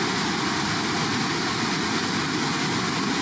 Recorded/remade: recorded